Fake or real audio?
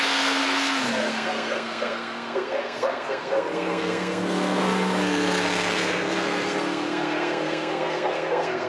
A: fake